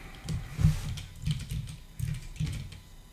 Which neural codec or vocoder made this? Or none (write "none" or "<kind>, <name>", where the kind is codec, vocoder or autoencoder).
none